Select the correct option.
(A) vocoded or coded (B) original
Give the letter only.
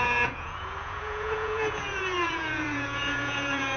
A